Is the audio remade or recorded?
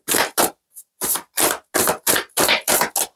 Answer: recorded